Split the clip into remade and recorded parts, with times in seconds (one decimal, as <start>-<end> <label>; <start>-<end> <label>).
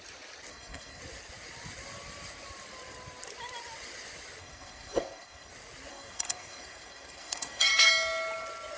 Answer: 0.0-0.5 recorded; 0.5-1.0 remade; 1.0-4.4 recorded; 4.4-5.5 remade; 5.5-5.9 recorded; 5.9-7.9 remade; 7.9-8.8 recorded